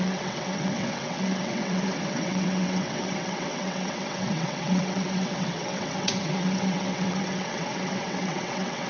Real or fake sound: fake